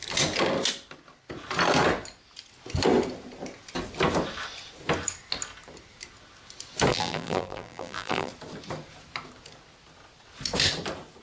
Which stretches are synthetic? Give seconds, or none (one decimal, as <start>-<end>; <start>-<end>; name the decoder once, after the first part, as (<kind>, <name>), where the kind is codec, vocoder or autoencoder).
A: 6.9-8.3 (vocoder, BigVGAN v2)